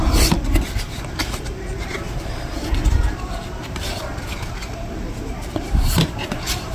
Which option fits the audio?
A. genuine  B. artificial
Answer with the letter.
B